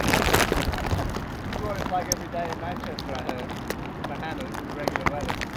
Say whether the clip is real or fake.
real